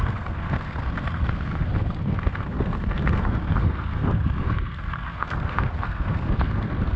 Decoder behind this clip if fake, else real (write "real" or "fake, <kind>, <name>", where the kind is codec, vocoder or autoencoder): fake, codec, SNAC